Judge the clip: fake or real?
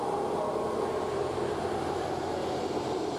real